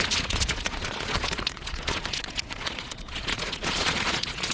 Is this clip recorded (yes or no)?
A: no